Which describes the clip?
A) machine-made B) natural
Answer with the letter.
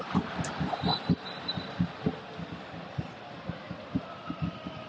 B